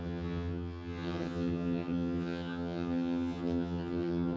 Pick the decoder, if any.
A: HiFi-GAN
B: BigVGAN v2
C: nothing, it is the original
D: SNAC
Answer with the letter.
A